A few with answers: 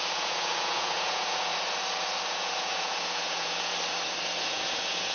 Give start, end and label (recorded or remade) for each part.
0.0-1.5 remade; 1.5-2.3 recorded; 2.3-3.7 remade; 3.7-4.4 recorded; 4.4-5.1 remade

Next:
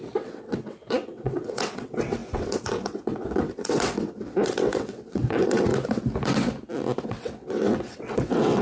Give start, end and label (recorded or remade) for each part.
0.0-5.7 remade; 5.7-7.0 recorded; 7.0-8.6 remade